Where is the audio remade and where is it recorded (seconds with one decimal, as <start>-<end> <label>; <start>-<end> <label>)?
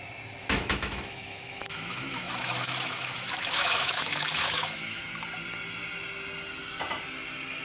0.0-0.4 recorded; 0.4-5.0 remade; 5.0-7.6 recorded